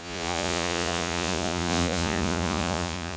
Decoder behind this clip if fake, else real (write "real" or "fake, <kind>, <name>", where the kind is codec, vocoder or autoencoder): fake, vocoder, Vocos